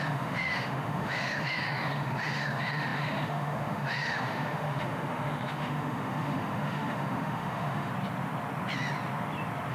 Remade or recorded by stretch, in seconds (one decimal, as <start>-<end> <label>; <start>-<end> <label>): 0.0-7.9 remade; 7.9-9.7 recorded